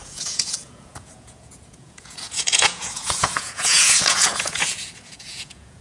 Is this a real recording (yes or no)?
no